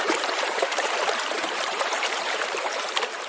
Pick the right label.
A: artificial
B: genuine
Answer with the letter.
A